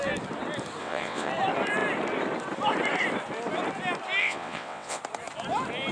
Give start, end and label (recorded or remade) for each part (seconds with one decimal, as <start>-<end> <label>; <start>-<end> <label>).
0.0-0.8 recorded; 0.8-1.3 remade; 1.3-4.2 recorded; 4.2-5.0 remade; 5.0-5.9 recorded